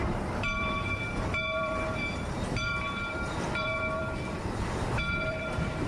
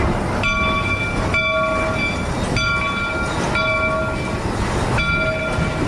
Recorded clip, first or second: second